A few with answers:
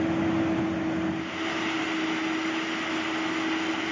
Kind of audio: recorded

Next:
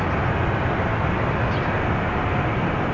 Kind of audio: recorded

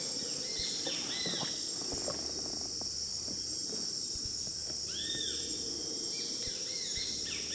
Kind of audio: recorded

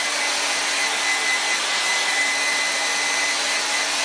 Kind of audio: recorded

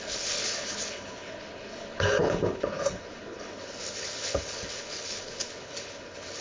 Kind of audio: remade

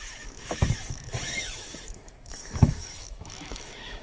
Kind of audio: remade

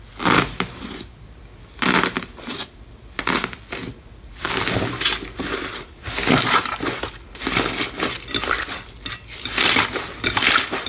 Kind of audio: recorded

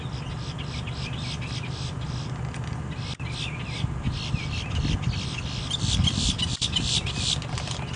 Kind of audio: recorded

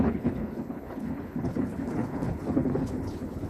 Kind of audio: remade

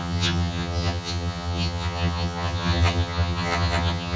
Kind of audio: remade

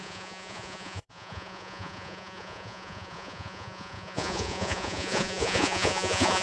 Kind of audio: remade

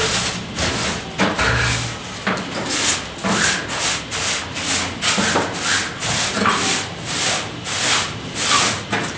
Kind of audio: recorded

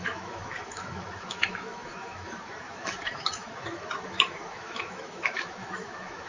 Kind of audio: remade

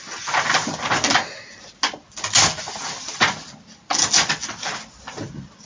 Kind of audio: recorded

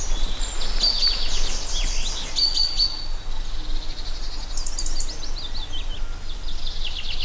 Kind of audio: recorded